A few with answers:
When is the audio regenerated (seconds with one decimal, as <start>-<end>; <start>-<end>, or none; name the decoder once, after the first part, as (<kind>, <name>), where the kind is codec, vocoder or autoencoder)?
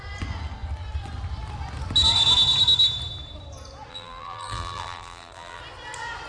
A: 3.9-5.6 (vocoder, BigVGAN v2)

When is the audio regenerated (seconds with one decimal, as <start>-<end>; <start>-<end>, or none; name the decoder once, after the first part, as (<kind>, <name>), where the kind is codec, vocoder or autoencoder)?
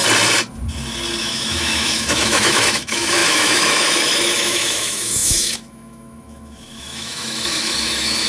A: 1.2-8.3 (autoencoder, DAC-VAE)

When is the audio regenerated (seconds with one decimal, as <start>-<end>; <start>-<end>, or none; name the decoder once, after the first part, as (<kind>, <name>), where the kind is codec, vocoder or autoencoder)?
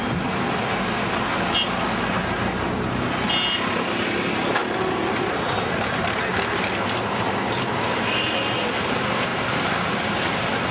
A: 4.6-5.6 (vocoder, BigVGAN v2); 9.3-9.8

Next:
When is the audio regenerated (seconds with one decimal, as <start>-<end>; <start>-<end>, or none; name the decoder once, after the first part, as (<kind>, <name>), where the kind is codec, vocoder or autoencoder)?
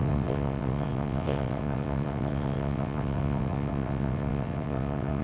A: 0.0-5.2 (vocoder, WaveNeXt)